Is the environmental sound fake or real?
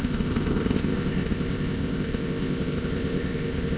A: fake